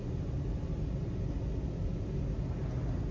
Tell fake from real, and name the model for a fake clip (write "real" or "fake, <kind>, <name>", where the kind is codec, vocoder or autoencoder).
real